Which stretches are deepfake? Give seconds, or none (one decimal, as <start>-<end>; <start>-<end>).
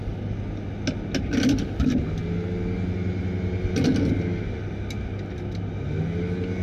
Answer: none